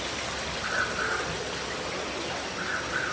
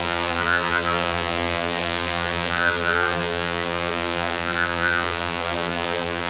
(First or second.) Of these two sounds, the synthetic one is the second